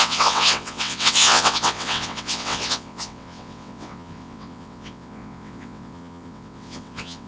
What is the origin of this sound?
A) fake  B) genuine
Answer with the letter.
A